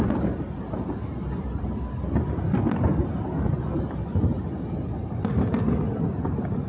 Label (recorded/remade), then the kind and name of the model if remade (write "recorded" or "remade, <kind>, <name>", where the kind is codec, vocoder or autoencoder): recorded